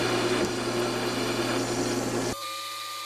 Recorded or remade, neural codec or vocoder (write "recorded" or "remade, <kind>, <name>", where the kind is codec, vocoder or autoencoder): recorded